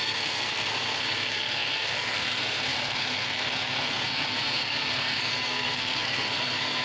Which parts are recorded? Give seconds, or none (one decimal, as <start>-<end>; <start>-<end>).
none